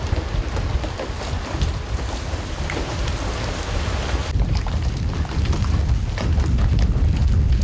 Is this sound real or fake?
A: real